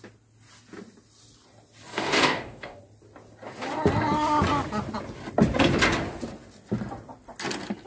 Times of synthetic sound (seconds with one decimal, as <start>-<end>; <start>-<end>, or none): 1.9-2.8